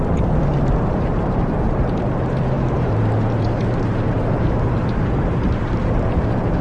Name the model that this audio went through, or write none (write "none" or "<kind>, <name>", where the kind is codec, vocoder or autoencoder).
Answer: vocoder, BigVGAN v2